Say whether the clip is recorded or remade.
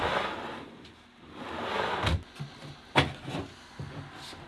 recorded